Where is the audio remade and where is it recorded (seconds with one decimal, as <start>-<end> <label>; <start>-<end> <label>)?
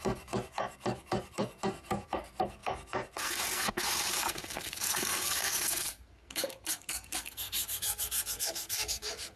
0.0-9.4 remade